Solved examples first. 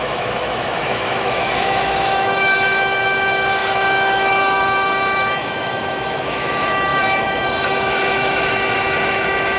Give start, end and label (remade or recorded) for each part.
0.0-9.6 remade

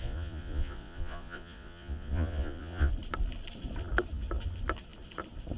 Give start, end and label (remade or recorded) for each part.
0.0-2.9 remade; 2.9-5.6 recorded

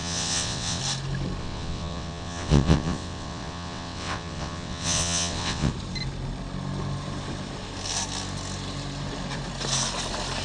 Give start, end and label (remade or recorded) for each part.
0.0-0.8 remade; 0.8-1.4 recorded; 1.4-5.7 remade; 5.7-10.4 recorded

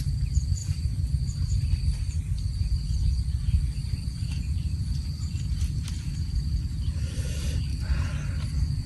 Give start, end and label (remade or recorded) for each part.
0.0-8.9 recorded

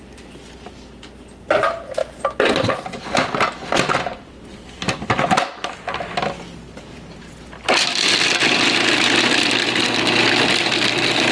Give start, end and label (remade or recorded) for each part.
0.0-11.3 recorded